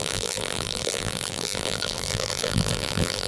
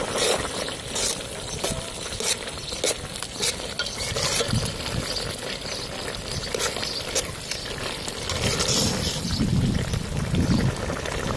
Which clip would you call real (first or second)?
second